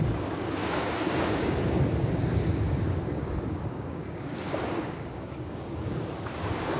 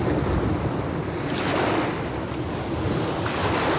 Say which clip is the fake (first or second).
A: first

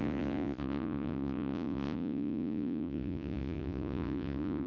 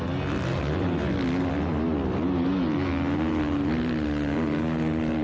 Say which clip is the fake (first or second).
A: first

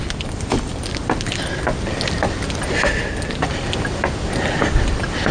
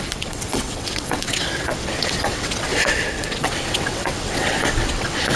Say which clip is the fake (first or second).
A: second